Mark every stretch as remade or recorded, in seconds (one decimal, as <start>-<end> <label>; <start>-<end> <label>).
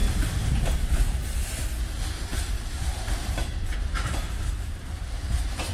0.0-2.3 recorded; 2.3-5.7 remade